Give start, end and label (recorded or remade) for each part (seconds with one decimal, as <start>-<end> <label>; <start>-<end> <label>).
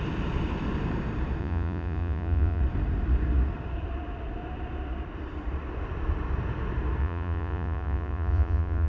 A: 0.0-1.4 recorded; 1.4-2.6 remade; 2.6-7.0 recorded; 7.0-8.9 remade